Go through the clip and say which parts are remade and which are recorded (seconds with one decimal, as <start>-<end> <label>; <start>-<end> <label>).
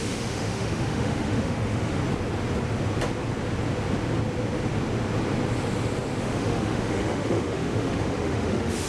0.0-2.0 remade; 2.0-6.2 recorded; 6.2-8.9 remade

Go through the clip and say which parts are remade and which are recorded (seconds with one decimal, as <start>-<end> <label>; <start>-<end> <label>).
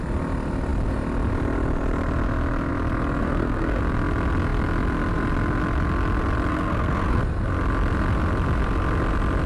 0.0-3.2 recorded; 3.2-3.8 remade; 3.8-6.5 recorded; 6.5-7.2 remade; 7.2-9.5 recorded